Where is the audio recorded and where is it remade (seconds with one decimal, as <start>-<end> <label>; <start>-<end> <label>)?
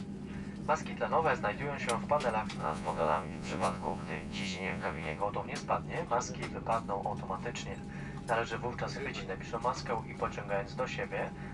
0.0-2.6 recorded; 2.6-5.2 remade; 5.2-11.5 recorded